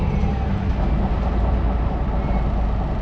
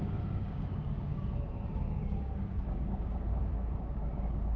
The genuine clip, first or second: first